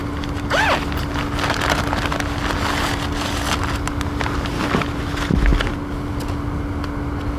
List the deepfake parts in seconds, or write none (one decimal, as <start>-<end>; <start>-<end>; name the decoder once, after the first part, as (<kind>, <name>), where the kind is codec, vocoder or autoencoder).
none